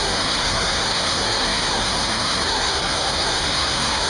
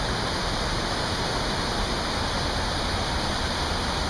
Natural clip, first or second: second